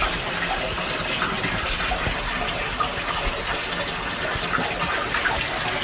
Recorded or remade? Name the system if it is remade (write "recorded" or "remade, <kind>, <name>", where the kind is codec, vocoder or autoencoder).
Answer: recorded